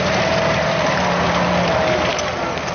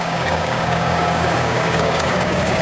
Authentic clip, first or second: first